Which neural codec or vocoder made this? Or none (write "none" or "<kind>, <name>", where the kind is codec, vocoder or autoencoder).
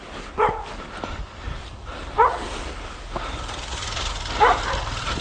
none